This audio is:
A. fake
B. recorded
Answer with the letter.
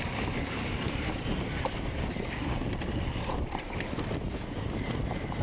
A